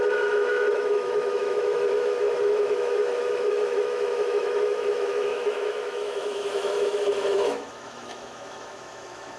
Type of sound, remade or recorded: remade